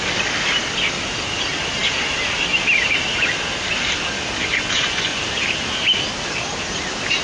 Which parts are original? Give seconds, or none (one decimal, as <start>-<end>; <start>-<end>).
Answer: 0.0-4.4; 5.2-7.2